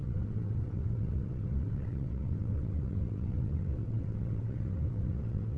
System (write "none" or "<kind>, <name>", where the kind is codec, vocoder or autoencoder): vocoder, WaveNeXt